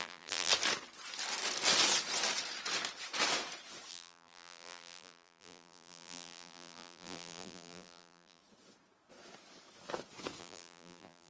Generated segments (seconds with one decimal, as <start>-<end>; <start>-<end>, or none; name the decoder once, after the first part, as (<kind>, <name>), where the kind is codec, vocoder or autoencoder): 0.0-0.5 (vocoder, BigVGAN v2); 3.9-8.4; 10.4-11.3